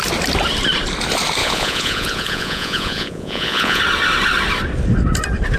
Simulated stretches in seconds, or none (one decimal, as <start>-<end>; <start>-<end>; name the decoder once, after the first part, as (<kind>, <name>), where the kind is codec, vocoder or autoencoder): 1.4-3.8 (vocoder, Vocos)